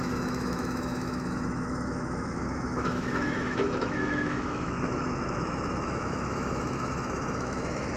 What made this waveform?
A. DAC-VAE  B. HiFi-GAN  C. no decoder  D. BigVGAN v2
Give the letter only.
A